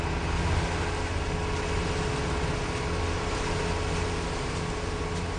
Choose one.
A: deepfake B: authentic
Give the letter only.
B